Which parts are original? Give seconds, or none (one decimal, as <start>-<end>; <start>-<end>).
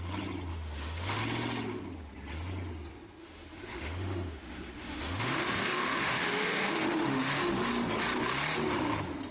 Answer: 0.0-0.5; 1.2-3.2; 7.7-9.3